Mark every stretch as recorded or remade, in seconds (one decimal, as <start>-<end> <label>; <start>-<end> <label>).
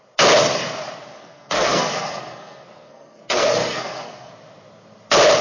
0.0-1.1 recorded; 1.1-4.3 remade; 4.3-5.4 recorded